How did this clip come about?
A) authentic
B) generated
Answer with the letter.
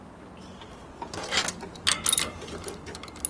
A